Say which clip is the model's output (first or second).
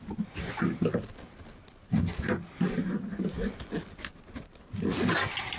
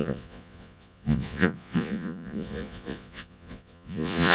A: second